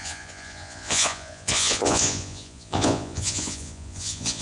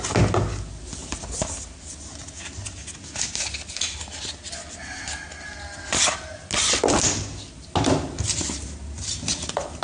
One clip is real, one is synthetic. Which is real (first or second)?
second